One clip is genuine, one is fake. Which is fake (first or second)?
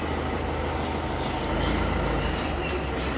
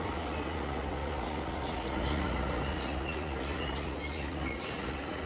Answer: second